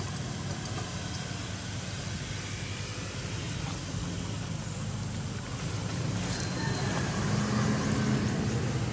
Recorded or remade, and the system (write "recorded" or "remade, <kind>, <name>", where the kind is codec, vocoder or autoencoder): recorded